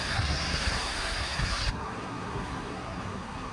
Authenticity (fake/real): fake